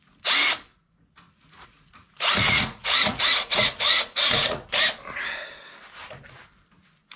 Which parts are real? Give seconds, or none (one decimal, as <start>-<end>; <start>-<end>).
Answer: 0.0-0.7; 4.7-7.2